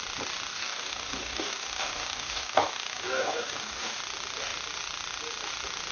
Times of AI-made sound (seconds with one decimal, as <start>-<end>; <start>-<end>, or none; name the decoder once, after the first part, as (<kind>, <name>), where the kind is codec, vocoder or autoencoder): 0.5-4.0 (codec, DAC)